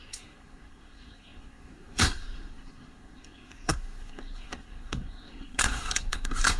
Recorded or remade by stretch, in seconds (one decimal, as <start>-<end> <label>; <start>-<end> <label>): 0.0-6.6 remade